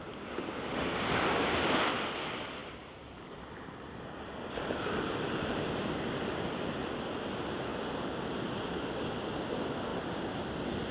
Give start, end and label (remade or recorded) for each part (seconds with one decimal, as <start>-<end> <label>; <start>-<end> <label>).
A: 0.0-2.6 recorded; 2.6-6.8 remade; 6.8-10.9 recorded